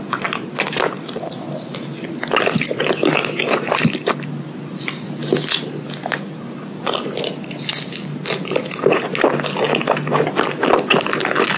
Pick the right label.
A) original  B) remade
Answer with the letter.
A